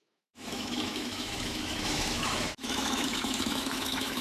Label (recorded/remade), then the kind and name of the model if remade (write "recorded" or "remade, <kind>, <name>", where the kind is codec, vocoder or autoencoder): remade, autoencoder, DAC-VAE